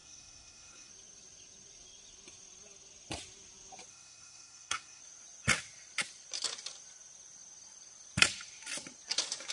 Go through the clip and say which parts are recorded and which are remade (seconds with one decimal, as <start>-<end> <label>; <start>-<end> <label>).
0.0-0.9 remade; 0.9-3.9 recorded; 3.9-5.0 remade; 5.0-9.5 recorded